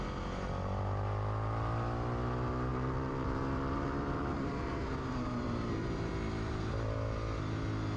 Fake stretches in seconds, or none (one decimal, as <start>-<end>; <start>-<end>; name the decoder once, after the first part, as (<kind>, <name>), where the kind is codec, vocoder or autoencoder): 2.7-6.1 (vocoder, BigVGAN v2)